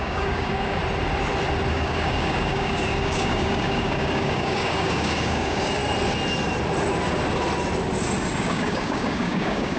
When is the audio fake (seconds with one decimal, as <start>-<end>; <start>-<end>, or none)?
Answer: 0.0-0.8; 1.7-5.8; 8.4-9.8